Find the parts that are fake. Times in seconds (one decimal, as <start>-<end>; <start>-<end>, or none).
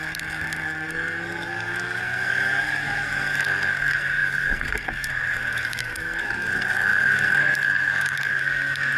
0.0-9.0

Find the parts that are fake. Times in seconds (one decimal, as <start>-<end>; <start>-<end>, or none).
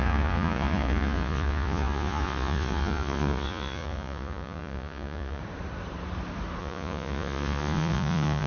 0.0-5.4; 6.6-8.5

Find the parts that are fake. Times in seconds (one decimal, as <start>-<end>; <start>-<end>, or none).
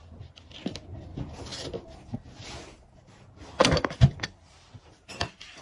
3.6-5.6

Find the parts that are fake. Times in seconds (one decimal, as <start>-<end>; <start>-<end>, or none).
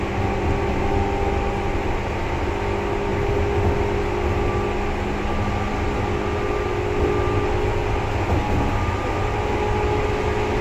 none